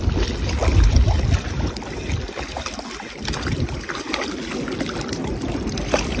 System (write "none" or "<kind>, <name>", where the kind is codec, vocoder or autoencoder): none